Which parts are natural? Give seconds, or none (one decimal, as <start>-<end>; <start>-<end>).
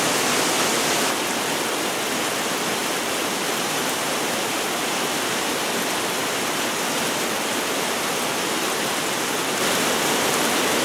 0.0-2.8; 5.6-10.8